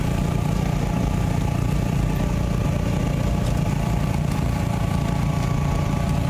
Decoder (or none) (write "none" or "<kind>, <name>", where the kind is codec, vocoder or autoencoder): vocoder, BigVGAN v2